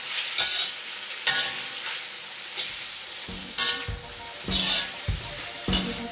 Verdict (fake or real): real